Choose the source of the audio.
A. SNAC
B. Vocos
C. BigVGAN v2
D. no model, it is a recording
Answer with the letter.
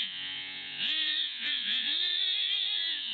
B